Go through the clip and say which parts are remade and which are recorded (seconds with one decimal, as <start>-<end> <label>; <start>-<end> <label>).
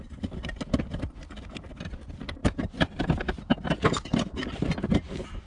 0.0-5.5 recorded